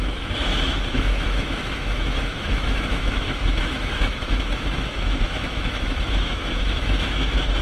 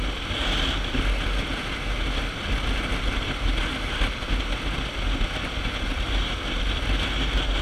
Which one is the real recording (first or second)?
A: second